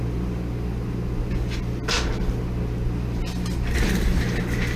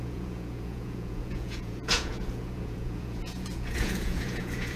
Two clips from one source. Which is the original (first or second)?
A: first